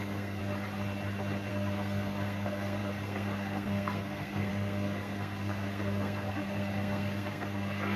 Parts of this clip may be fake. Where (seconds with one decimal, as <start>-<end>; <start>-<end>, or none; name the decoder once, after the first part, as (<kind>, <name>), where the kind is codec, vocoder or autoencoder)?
0.0-0.4 (codec, SNAC); 1.5-8.0